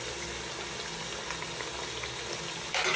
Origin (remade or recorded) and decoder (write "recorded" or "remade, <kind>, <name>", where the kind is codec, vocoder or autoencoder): recorded